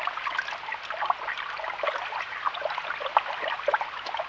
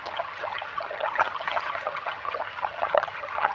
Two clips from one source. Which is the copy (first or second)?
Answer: second